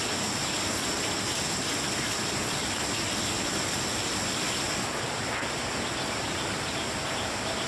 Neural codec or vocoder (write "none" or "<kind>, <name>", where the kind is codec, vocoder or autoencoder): none